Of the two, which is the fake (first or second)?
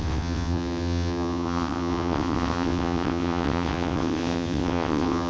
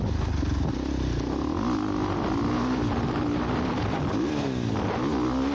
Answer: first